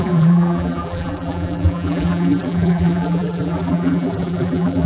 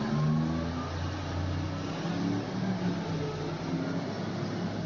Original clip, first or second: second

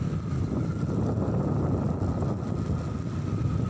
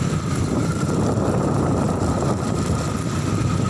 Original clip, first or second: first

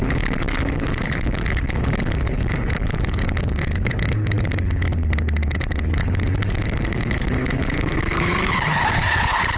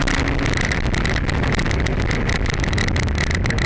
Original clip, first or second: second